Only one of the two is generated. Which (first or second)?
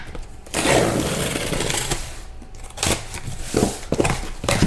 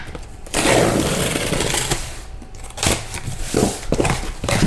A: second